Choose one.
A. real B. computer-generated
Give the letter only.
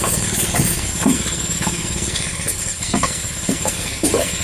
B